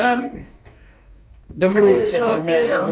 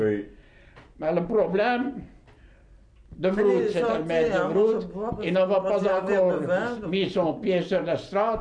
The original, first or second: second